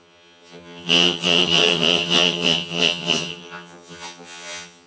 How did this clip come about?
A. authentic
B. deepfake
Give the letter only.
B